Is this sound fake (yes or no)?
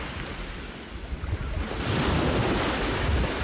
no